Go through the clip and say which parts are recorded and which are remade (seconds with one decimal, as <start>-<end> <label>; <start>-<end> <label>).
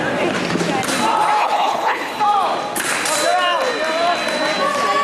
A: 0.0-1.4 recorded; 1.4-2.2 remade; 2.2-5.0 recorded